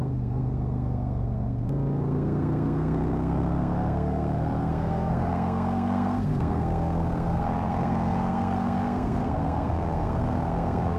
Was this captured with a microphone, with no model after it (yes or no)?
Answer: no